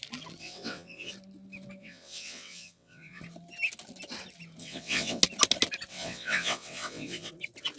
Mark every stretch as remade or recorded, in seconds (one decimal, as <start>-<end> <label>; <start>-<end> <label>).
0.0-0.4 recorded; 0.4-1.1 remade; 1.1-1.8 recorded; 1.8-3.2 remade; 3.2-4.6 recorded; 4.6-5.2 remade; 5.2-5.9 recorded; 5.9-7.3 remade; 7.3-7.8 recorded